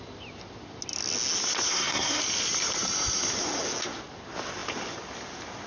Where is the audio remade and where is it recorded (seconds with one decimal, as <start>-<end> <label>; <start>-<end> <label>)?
0.0-1.7 recorded; 1.7-2.2 remade; 2.2-5.7 recorded